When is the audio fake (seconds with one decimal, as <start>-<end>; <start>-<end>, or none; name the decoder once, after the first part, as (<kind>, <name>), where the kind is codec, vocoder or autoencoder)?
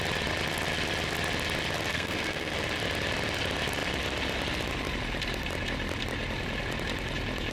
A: 1.9-2.5 (codec, SNAC)